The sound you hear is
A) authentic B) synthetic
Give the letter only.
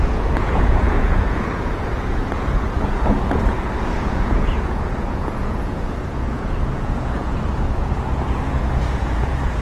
B